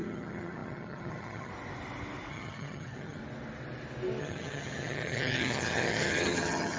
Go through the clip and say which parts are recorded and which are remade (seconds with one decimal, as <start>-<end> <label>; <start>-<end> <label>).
0.0-1.5 remade; 1.5-2.3 recorded; 2.3-3.2 remade; 3.2-4.2 recorded; 4.2-6.8 remade